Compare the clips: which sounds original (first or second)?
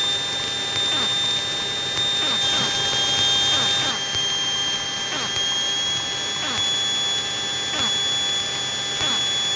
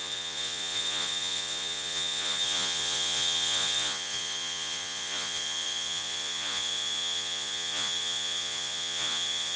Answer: first